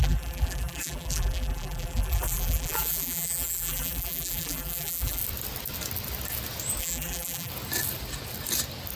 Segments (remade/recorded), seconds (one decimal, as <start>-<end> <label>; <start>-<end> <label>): 0.0-5.2 remade; 5.2-6.8 recorded; 6.8-7.5 remade; 7.5-9.0 recorded